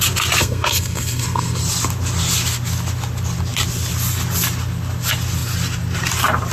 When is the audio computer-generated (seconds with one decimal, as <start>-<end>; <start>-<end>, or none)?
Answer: 0.4-1.6